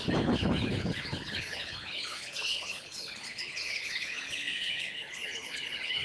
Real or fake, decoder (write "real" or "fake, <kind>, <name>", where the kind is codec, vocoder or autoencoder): fake, codec, HILCodec